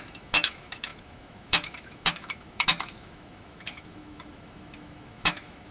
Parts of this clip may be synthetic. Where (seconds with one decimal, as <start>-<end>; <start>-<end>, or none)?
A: 0.0-5.7